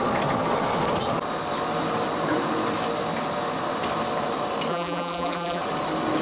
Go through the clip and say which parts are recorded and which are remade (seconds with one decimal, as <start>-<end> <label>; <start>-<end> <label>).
0.0-4.7 recorded; 4.7-5.6 remade; 5.6-6.2 recorded